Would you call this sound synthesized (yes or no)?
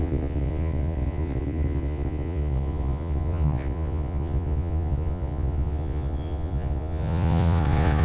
yes